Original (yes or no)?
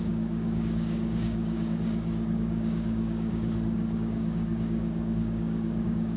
no